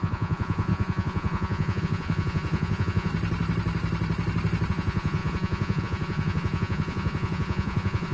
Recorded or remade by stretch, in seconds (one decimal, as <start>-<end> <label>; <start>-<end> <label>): 0.0-3.1 remade; 3.1-4.7 recorded; 4.7-8.1 remade